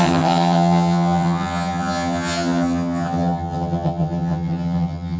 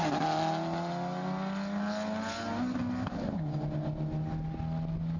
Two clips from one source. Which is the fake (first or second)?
first